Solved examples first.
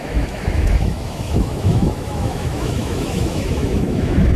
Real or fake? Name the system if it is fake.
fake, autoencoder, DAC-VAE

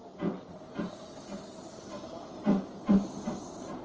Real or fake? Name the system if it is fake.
real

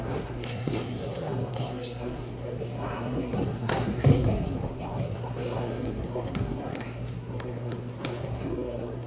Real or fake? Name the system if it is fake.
fake, codec, SNAC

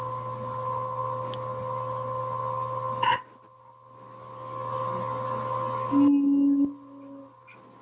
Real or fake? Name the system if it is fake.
real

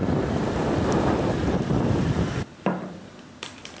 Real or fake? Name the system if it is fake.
fake, vocoder, BigVGAN v2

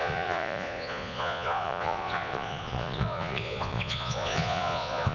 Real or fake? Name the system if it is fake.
fake, vocoder, Vocos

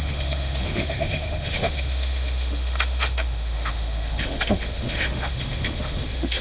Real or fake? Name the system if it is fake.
fake, autoencoder, DAC-VAE